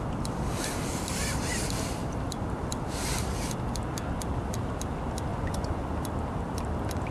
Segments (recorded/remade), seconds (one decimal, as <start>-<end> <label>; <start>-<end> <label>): 0.0-5.3 recorded; 5.3-5.9 remade; 5.9-7.1 recorded